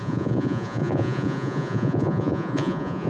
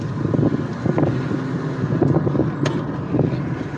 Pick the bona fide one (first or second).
second